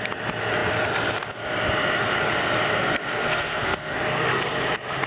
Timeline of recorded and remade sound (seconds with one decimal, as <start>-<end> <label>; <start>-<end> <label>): 0.0-3.1 recorded; 3.1-3.9 remade; 3.9-5.1 recorded